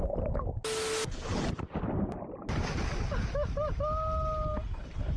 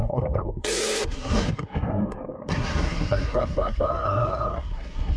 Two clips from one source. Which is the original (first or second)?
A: first